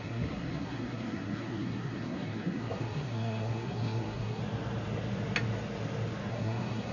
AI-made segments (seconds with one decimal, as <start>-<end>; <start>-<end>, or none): 0.0-4.4; 6.3-6.9